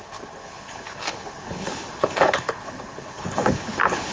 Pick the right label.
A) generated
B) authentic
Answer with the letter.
A